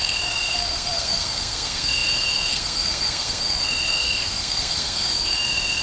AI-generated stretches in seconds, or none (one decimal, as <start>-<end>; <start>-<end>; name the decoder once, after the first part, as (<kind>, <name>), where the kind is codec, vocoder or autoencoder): 0.0-5.8 (codec, SNAC)